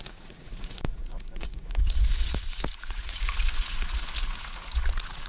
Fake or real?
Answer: fake